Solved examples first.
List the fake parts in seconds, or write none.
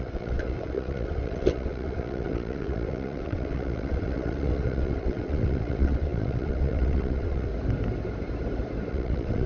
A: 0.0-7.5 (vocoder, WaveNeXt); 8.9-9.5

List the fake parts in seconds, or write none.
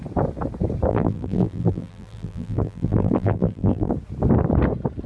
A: 0.9-3.9 (vocoder, BigVGAN v2)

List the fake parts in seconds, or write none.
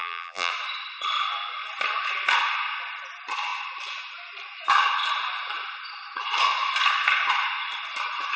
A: 0.0-0.5 (vocoder, BigVGAN v2)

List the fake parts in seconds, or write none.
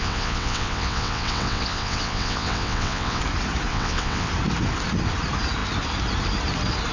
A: 0.0-3.2 (vocoder, WaveNeXt); 3.7-4.3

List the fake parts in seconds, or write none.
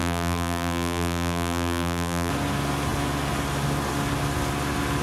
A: 0.0-2.3 (vocoder, BigVGAN v2)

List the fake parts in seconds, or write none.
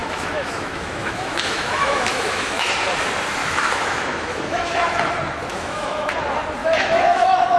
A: 0.0-2.7 (autoencoder, DAC-VAE); 3.4-5.1; 5.5-6.1; 6.6-7.6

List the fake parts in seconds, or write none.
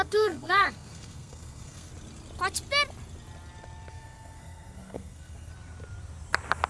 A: 0.0-1.9 (codec, SNAC); 3.9-5.5